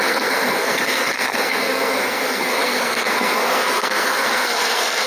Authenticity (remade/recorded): remade